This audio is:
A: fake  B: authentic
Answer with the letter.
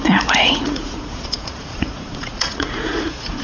A